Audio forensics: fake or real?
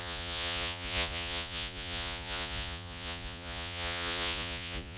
fake